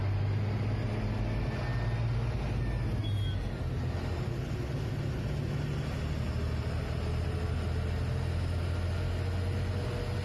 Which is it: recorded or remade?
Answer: recorded